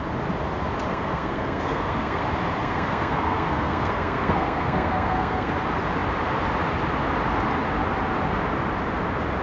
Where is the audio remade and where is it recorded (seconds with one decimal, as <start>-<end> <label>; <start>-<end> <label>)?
0.0-0.9 recorded; 0.9-2.2 remade; 2.2-2.6 recorded; 2.6-5.5 remade; 5.5-9.4 recorded